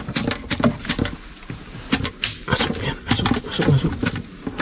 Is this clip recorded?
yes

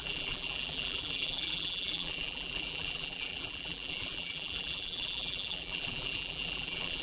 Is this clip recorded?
no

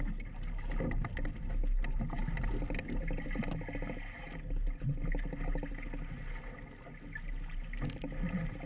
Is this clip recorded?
yes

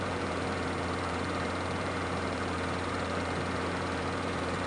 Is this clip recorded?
no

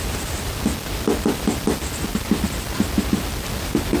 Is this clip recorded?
yes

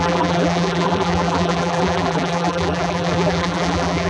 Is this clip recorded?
no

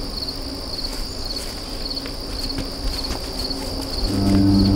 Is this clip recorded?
yes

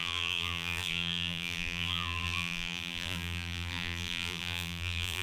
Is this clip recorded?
no